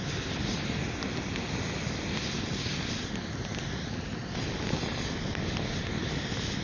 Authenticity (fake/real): real